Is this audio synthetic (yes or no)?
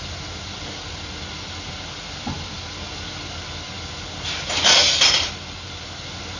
no